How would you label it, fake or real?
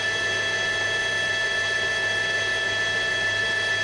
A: real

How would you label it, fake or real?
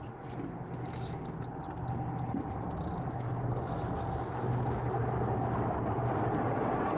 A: real